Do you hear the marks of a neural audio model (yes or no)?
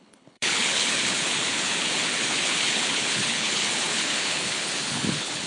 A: yes